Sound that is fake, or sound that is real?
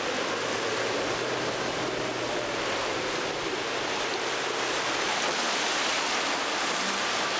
real